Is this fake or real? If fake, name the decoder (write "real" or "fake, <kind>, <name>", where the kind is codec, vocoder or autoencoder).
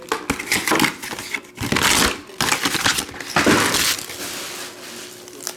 real